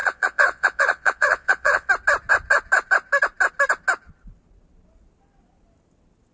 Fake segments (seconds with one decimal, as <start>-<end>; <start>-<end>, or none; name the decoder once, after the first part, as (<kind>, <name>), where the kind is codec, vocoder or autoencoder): 0.0-1.9 (vocoder, Vocos)